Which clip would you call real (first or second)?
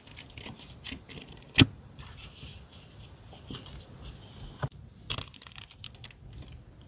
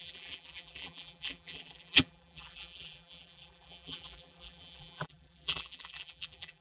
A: first